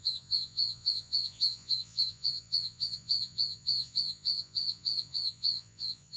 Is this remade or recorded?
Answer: remade